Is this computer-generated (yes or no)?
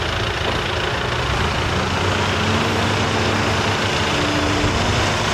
no